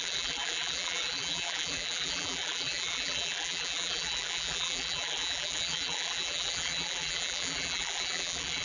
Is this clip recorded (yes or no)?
no